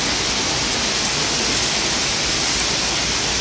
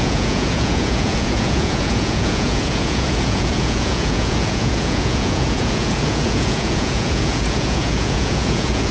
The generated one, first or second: second